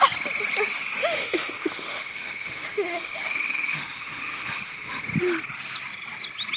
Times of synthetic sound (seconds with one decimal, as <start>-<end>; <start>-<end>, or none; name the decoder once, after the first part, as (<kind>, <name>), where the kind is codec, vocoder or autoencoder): 1.0-5.0 (autoencoder, DAC-VAE)